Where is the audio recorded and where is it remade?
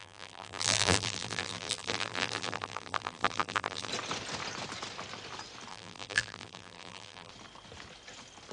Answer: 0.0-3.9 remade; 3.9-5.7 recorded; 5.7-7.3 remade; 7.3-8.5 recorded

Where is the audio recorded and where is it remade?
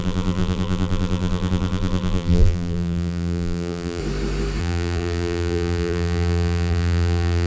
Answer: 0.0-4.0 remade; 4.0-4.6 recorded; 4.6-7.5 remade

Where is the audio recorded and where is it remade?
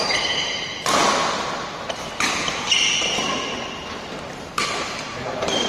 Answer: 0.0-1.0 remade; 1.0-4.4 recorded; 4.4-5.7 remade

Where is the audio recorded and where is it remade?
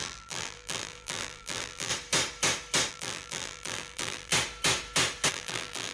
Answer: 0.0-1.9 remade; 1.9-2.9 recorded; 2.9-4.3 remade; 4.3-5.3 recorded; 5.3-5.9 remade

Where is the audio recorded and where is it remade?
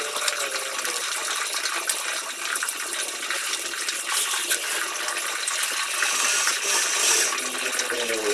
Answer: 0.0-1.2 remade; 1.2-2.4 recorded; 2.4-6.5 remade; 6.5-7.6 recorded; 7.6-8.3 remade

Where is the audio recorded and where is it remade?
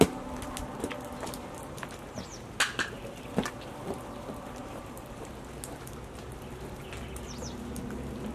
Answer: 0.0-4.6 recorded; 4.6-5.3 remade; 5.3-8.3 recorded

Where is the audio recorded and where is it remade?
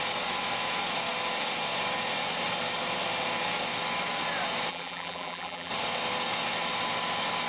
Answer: 0.0-4.7 recorded; 4.7-5.7 remade; 5.7-7.5 recorded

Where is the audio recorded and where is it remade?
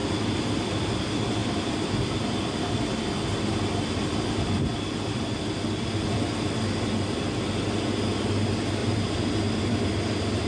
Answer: 0.0-0.8 remade; 0.8-1.4 recorded; 1.4-1.9 remade; 1.9-8.8 recorded; 8.8-10.5 remade